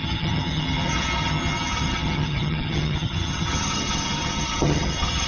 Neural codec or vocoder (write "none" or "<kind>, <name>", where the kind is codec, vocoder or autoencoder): vocoder, HiFi-GAN